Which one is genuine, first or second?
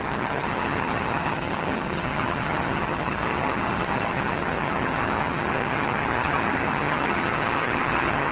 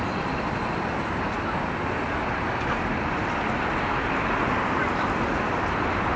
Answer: second